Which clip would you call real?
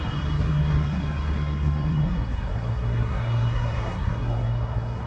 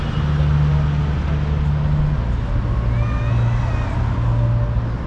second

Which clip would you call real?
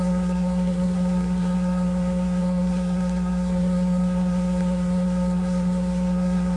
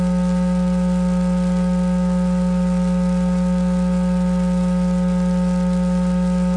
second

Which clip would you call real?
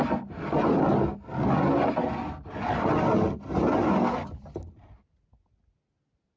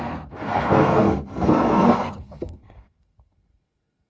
first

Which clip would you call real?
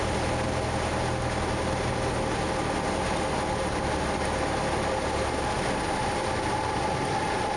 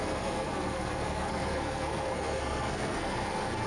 first